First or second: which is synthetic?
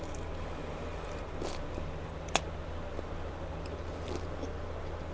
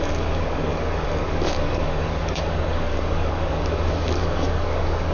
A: second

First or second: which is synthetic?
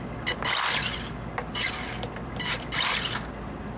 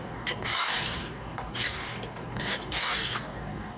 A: second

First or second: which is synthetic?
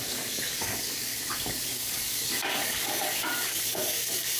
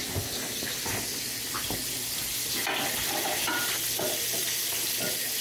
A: first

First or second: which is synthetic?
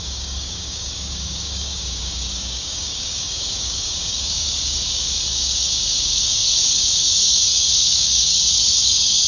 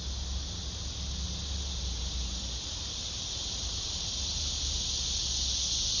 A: first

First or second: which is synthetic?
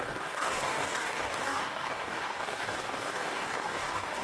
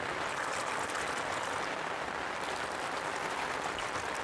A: first